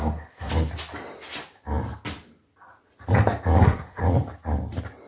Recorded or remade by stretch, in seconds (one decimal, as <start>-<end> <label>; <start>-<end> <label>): 0.0-0.5 remade; 0.5-3.6 recorded; 3.6-4.0 remade; 4.0-5.1 recorded